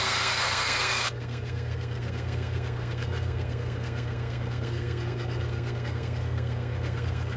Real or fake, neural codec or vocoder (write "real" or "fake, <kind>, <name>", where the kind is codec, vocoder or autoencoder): fake, codec, SNAC